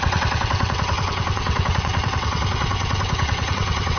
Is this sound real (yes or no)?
no